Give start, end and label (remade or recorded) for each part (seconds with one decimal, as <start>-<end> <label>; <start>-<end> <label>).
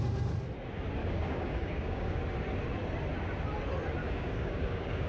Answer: 0.0-1.0 recorded; 1.0-2.2 remade; 2.2-4.0 recorded; 4.0-5.1 remade